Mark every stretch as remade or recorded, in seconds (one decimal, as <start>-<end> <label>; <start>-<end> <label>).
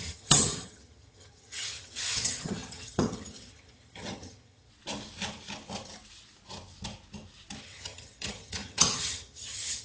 0.0-4.7 remade; 4.7-7.6 recorded; 7.6-9.8 remade